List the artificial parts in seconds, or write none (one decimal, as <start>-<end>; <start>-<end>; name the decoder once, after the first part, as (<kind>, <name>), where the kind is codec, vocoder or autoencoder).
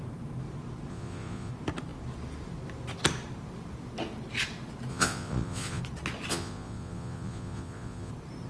0.9-1.5 (vocoder, Vocos); 4.9-5.8; 6.3-8.1